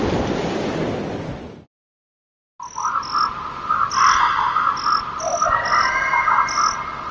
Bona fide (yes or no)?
yes